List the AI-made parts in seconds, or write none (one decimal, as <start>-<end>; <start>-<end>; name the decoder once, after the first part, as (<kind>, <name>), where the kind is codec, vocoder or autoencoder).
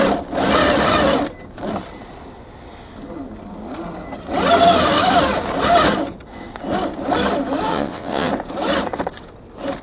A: 7.7-8.3 (vocoder, WaveNeXt)